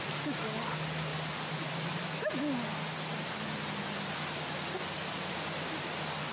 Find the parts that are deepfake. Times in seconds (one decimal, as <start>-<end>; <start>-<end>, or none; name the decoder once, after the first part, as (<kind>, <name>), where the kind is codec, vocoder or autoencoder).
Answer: none